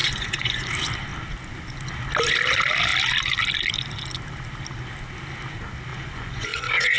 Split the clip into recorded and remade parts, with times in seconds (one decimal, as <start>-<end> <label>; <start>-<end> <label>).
0.0-0.7 remade; 0.7-5.9 recorded; 5.9-7.0 remade